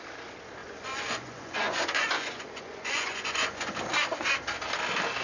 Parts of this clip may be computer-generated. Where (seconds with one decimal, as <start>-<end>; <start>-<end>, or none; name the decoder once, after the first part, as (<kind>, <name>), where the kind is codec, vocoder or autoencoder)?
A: 0.6-3.7 (vocoder, Vocos)